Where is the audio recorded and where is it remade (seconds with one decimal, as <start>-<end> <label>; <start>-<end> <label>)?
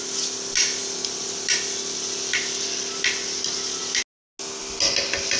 0.0-5.4 recorded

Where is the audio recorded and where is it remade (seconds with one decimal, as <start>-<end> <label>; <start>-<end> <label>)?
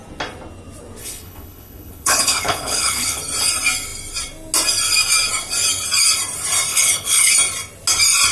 0.0-1.0 recorded; 1.0-3.2 remade; 3.2-6.7 recorded; 6.7-7.3 remade; 7.3-8.3 recorded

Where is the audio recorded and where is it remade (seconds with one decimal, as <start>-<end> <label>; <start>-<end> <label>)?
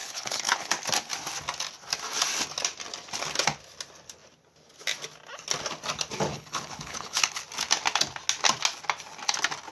0.0-0.7 remade; 0.7-6.3 recorded; 6.3-7.4 remade; 7.4-9.7 recorded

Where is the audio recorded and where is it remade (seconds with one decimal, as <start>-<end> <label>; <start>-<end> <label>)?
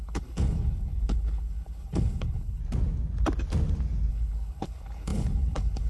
0.0-2.6 remade; 2.6-4.1 recorded; 4.1-5.9 remade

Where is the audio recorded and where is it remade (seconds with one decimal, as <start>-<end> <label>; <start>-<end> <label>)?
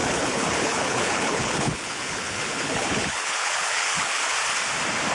0.0-4.2 remade; 4.2-5.1 recorded